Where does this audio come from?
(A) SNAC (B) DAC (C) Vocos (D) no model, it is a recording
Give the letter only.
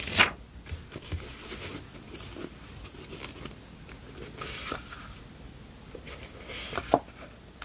D